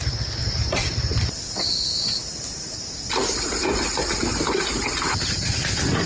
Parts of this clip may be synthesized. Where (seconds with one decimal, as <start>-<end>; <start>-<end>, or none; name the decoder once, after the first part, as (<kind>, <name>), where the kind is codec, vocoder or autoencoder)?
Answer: 0.4-1.7 (vocoder, BigVGAN v2)